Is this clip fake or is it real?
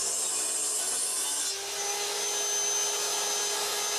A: real